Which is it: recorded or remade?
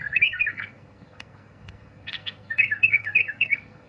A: remade